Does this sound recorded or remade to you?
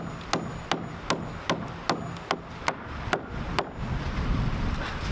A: recorded